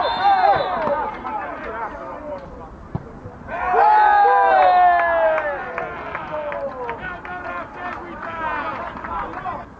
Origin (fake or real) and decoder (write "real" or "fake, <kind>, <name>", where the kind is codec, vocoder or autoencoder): real